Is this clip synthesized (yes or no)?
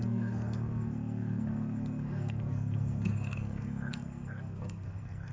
yes